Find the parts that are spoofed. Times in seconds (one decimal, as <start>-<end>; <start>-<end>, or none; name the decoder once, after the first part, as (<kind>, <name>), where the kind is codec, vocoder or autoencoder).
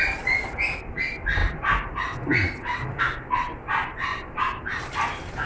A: 1.4-3.0 (vocoder, BigVGAN v2); 4.1-4.8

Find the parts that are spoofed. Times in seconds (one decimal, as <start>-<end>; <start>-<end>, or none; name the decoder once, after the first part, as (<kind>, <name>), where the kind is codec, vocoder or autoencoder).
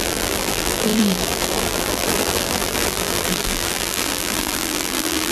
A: 0.0-5.3 (vocoder, BigVGAN v2)